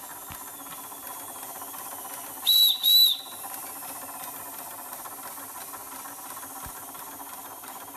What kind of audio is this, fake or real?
real